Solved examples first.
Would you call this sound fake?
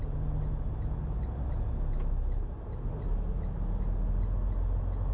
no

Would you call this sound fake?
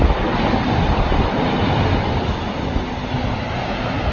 no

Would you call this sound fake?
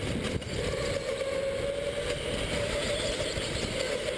no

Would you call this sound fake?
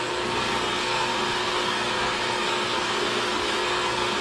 yes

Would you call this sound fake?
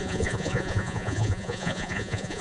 yes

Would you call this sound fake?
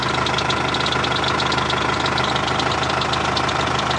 no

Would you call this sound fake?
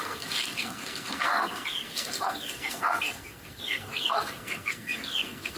yes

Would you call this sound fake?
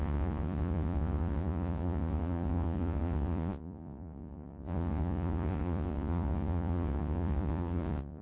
yes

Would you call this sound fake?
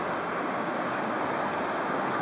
yes